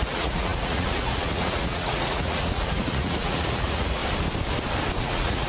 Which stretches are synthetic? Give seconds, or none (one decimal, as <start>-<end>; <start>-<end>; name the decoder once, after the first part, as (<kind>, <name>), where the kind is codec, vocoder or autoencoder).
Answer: 0.0-4.0 (vocoder, Vocos); 5.0-5.5